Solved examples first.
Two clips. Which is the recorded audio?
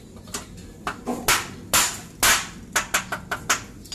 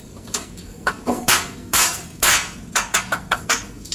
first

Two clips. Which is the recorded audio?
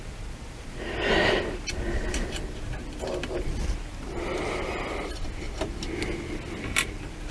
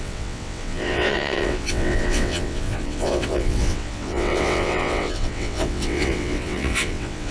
first